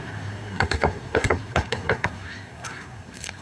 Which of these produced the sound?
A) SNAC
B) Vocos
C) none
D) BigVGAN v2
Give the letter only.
A